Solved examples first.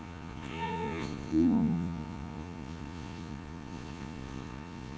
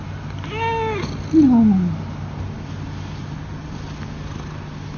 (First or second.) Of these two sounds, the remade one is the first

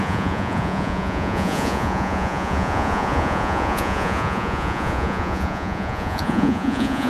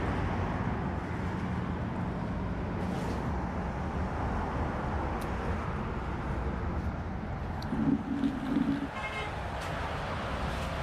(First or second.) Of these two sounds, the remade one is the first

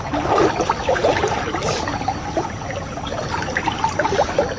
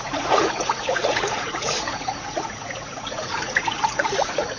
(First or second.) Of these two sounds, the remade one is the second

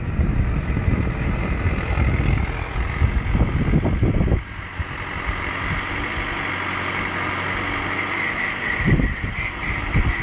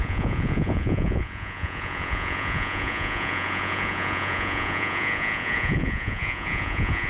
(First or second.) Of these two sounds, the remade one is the second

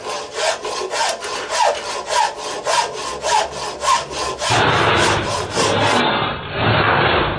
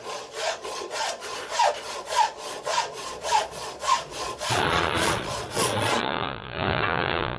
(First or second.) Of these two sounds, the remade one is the second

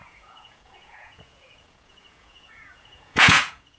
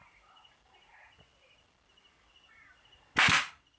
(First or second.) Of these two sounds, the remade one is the first